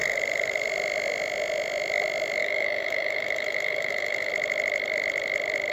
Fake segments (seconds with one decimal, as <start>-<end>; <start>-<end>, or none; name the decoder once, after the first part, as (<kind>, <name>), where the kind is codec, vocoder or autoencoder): 2.4-4.3 (autoencoder, DAC-VAE)